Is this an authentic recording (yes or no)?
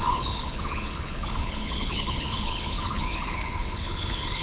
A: no